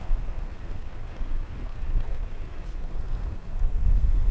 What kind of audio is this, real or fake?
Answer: fake